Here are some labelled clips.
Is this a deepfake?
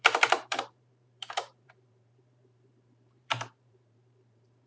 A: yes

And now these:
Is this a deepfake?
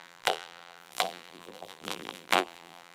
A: yes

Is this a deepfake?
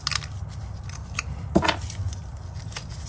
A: no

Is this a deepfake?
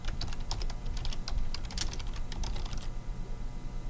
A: no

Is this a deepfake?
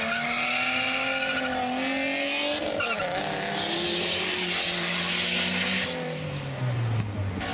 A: no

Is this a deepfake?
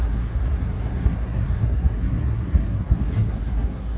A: yes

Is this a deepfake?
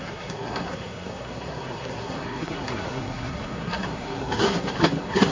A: yes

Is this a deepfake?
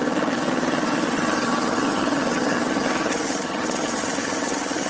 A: yes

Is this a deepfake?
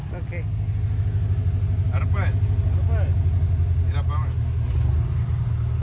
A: no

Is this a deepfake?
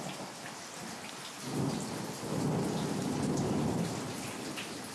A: no